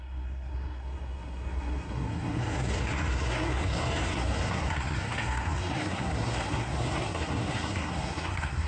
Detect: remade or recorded remade